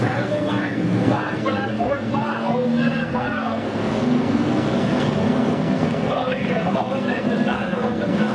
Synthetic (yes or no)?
yes